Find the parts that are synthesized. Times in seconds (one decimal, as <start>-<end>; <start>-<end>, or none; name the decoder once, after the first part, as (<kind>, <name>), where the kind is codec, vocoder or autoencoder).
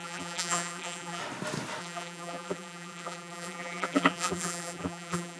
0.0-1.2 (vocoder, BigVGAN v2); 1.8-5.4